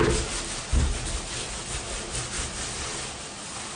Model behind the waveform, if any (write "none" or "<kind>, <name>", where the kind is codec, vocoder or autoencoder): none